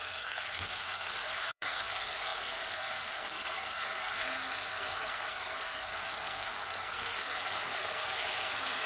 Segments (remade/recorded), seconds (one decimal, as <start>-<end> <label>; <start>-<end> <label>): 0.0-8.9 remade